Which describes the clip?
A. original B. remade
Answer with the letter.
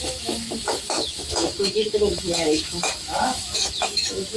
B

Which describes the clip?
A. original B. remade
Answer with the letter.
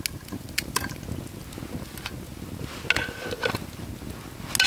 A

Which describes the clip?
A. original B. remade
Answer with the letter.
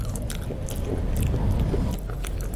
A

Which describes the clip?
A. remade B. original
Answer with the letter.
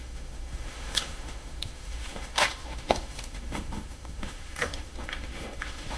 A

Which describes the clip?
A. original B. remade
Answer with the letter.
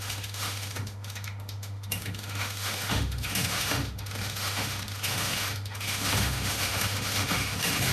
B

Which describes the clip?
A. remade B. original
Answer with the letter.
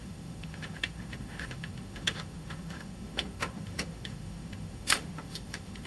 A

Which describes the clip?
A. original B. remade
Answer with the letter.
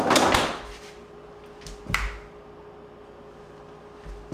A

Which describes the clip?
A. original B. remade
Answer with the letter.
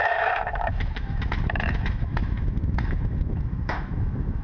B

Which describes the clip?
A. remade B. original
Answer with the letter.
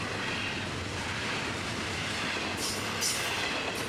B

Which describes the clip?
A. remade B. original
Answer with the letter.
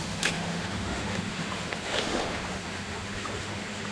A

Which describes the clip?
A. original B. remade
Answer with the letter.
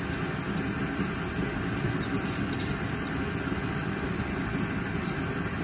A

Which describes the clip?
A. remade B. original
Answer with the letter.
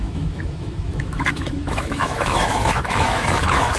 A